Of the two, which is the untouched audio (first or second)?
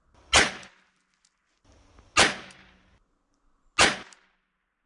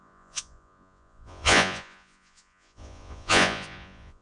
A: first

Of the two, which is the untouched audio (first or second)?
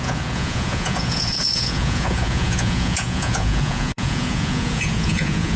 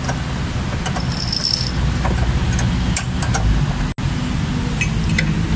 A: second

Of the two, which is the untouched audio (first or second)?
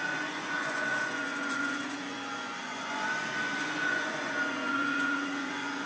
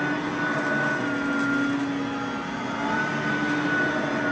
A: second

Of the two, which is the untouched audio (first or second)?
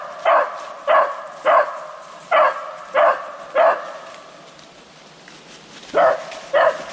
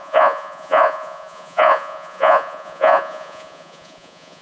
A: first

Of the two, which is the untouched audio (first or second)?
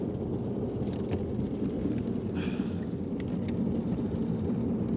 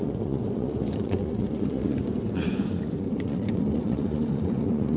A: first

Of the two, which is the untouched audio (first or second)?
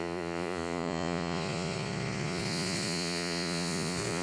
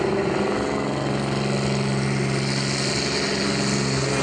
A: second